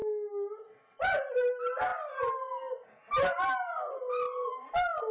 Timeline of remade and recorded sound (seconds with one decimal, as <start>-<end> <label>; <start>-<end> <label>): 0.0-5.1 recorded